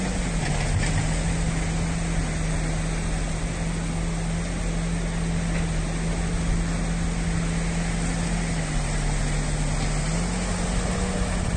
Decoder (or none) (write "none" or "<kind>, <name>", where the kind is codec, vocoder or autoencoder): none